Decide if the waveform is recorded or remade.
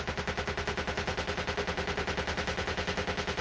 recorded